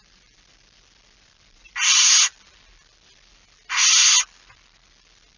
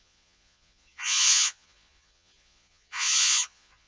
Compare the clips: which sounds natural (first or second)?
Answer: first